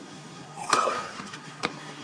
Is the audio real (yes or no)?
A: no